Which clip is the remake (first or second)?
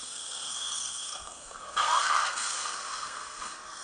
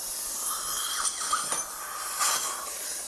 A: first